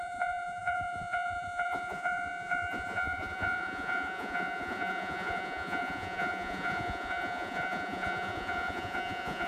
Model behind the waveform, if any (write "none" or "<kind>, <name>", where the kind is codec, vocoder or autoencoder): vocoder, Vocos